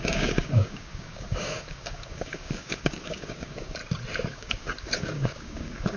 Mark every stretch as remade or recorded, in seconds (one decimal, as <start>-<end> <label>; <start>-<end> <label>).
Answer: 0.0-3.8 remade; 3.8-4.3 recorded; 4.3-6.0 remade